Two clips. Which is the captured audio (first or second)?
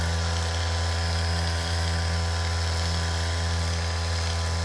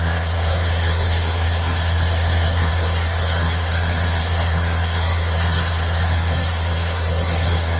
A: first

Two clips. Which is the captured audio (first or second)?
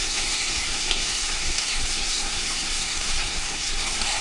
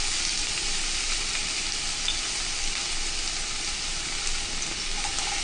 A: second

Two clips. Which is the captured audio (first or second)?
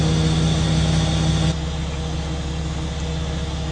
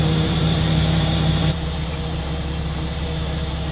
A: first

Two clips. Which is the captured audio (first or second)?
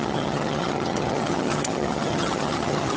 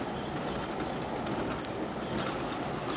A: second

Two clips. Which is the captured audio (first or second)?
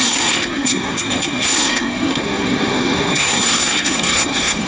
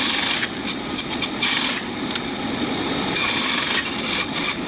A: second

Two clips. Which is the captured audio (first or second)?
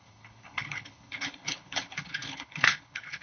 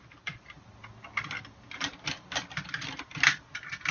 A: second